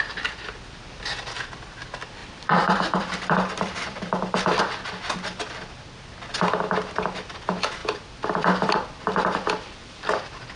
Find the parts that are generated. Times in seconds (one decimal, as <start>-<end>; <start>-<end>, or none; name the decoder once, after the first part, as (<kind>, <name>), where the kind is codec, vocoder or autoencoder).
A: 2.2-4.6 (vocoder, BigVGAN v2); 7.8-10.2